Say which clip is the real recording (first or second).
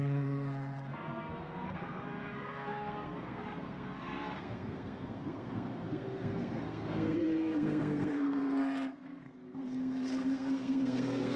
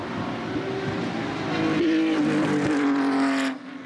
second